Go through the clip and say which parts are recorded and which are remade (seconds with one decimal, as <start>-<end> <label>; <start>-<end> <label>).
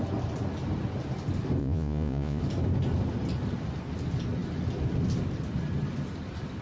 0.0-1.6 recorded; 1.6-2.4 remade; 2.4-6.6 recorded